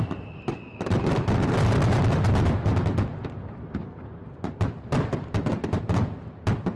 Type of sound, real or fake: real